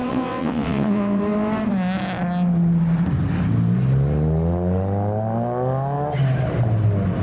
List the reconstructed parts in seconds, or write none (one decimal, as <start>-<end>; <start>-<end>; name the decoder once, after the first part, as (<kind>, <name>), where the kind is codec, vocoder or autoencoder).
0.0-1.2 (vocoder, WaveNeXt)